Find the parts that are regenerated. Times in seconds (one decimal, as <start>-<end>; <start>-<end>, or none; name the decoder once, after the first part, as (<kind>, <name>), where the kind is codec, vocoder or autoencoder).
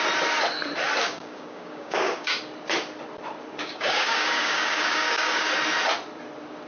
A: 1.0-2.4 (codec, DAC); 3.6-5.5